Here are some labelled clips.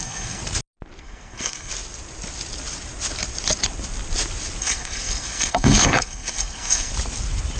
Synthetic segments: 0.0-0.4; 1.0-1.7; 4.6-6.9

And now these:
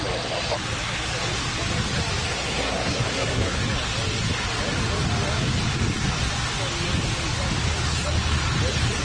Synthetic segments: 2.3-3.6

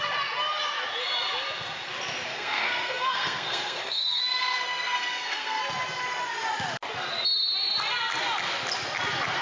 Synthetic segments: 2.3-5.6

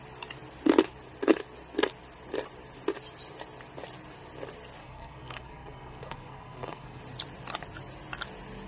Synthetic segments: 4.8-7.0